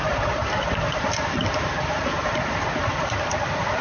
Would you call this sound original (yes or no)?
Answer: no